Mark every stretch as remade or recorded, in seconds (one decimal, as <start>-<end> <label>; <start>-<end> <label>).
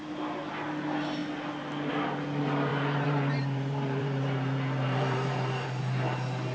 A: 0.0-2.7 recorded; 2.7-5.8 remade; 5.8-6.5 recorded